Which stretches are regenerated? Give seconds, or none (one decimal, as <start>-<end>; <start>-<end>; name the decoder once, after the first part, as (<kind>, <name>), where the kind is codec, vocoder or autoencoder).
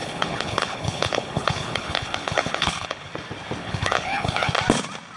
0.0-3.1 (codec, HILCodec); 3.6-4.5